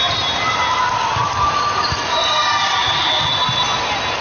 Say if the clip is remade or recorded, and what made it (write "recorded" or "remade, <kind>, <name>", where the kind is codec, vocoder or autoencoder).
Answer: recorded